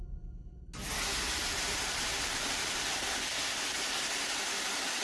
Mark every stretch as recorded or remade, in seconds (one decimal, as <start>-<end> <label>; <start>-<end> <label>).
0.0-1.4 recorded; 1.4-3.4 remade; 3.4-5.0 recorded